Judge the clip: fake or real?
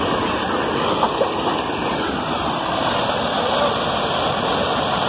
real